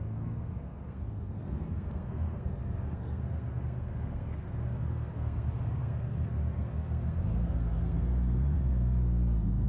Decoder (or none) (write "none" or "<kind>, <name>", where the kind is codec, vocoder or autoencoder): codec, SNAC